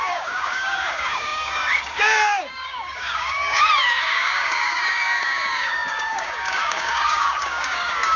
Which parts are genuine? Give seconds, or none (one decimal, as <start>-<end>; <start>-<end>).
none